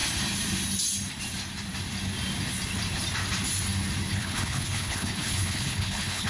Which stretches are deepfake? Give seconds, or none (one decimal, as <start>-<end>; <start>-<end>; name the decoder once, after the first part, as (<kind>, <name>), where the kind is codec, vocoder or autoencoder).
4.1-6.3 (codec, HILCodec)